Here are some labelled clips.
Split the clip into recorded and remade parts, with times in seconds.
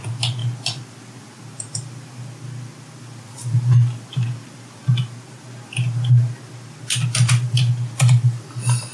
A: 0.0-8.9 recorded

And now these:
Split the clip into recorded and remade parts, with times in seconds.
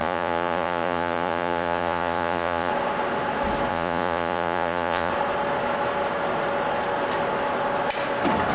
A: 0.0-2.7 remade; 2.7-3.7 recorded; 3.7-5.1 remade; 5.1-8.5 recorded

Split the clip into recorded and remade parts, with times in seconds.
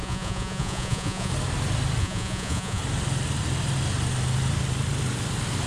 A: 0.0-1.3 remade; 1.3-2.0 recorded; 2.0-2.8 remade; 2.8-5.7 recorded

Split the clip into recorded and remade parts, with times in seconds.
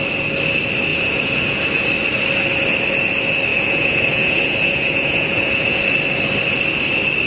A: 0.0-0.9 recorded; 0.9-1.6 remade; 1.6-3.5 recorded; 3.5-5.8 remade; 5.8-7.3 recorded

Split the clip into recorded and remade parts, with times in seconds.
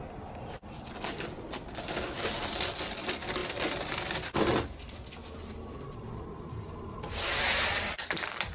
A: 0.0-8.5 recorded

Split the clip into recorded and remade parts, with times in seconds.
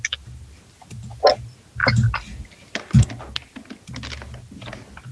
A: 0.0-5.1 recorded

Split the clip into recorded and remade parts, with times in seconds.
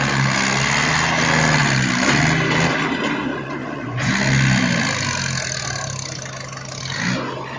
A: 0.0-3.3 recorded; 3.3-4.1 remade; 4.1-7.6 recorded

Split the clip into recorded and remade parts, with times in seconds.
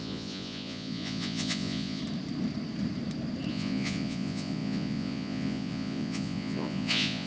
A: 0.0-2.0 remade; 2.0-3.5 recorded; 3.5-7.3 remade